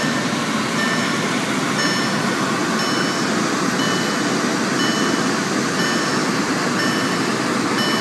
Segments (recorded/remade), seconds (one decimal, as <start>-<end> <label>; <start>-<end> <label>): 0.0-8.0 recorded